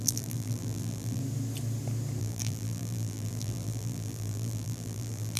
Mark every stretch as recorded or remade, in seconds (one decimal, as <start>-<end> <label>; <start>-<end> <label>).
0.0-1.2 remade; 1.2-2.2 recorded; 2.2-5.4 remade